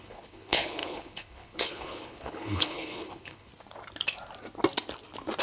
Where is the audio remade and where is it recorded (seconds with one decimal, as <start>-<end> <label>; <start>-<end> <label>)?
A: 0.0-3.5 remade; 3.5-5.4 recorded